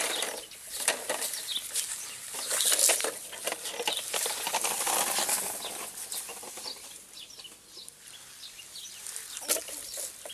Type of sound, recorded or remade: recorded